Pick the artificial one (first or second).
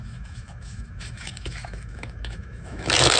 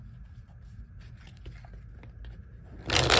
first